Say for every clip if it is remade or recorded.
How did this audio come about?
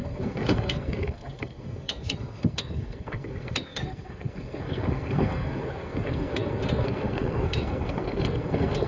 remade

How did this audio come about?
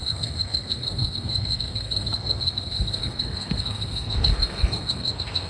remade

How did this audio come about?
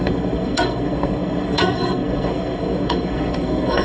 remade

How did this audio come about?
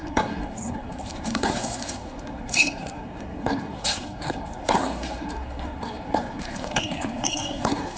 remade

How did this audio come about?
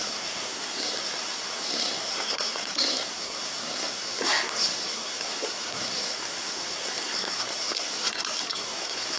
remade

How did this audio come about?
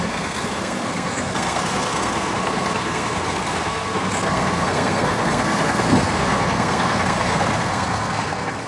remade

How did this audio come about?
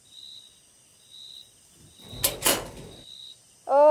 recorded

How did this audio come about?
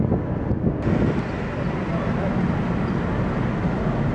recorded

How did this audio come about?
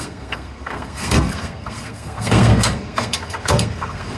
remade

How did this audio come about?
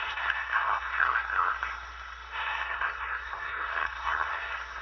remade